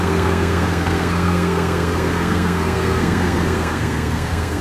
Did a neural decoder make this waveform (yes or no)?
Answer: yes